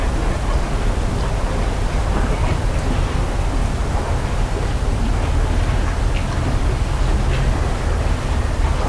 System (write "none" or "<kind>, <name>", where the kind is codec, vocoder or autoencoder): none